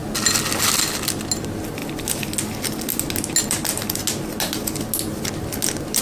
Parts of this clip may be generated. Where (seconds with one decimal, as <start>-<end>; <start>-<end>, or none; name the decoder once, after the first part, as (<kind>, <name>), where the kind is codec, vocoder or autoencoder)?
none